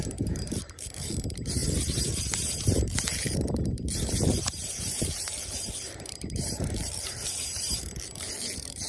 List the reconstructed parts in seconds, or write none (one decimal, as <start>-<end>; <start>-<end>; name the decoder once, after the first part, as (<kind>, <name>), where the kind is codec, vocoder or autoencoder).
0.0-8.9 (vocoder, BigVGAN v2)